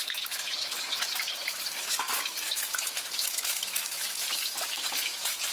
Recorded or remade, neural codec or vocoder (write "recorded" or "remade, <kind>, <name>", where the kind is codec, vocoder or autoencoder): remade, autoencoder, DAC-VAE